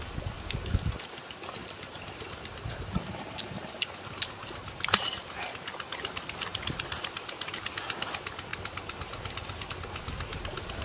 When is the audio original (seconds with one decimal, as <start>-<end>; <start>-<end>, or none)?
0.0-1.6; 4.1-6.5; 7.7-10.8